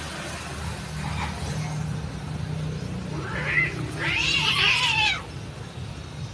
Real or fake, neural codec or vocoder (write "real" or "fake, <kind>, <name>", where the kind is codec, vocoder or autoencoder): real